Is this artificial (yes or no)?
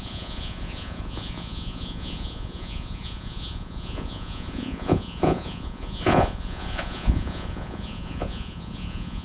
yes